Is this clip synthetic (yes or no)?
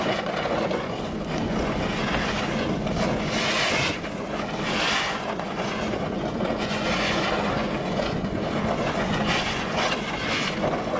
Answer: yes